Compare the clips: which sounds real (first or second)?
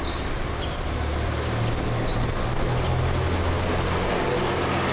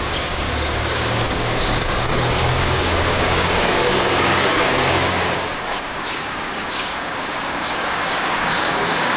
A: first